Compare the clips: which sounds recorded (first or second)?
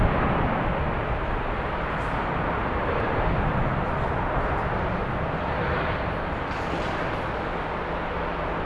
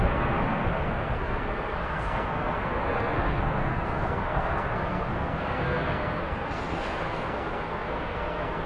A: first